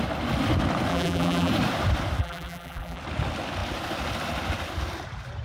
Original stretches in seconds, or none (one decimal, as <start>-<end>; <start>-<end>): 0.0-0.9; 1.5-2.2; 3.0-5.4